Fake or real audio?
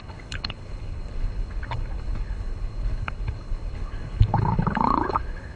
fake